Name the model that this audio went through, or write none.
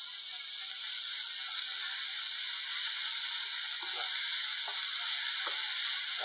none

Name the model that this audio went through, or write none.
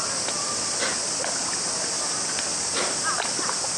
none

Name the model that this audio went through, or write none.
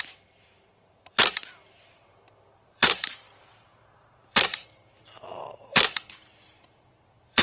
vocoder, BigVGAN v2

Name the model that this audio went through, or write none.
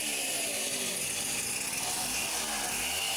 none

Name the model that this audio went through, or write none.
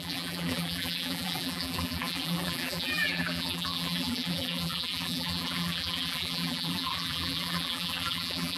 vocoder, BigVGAN v2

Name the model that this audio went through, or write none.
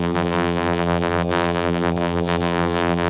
vocoder, BigVGAN v2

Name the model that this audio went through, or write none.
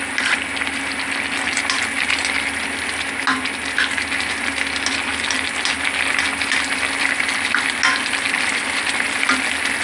none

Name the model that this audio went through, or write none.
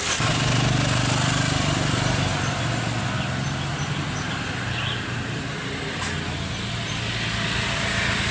none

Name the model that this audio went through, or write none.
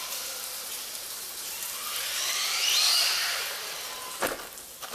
vocoder, BigVGAN v2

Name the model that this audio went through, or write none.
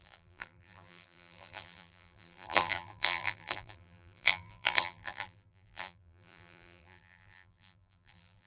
vocoder, BigVGAN v2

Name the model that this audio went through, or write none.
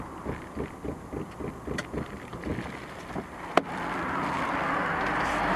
none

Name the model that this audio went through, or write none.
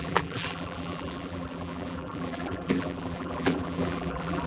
vocoder, BigVGAN v2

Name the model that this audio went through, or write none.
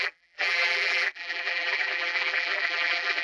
vocoder, BigVGAN v2